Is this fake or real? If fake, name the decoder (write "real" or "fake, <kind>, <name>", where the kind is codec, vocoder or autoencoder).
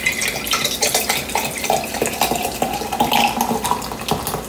real